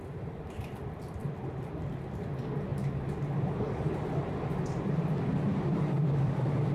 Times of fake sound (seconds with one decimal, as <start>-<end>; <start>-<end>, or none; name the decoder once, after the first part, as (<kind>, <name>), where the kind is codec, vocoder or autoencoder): none